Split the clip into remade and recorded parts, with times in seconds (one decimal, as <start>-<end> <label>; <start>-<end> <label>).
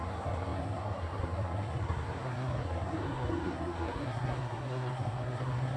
0.0-5.8 remade